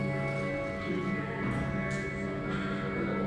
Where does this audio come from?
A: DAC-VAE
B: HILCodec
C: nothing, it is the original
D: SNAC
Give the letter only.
C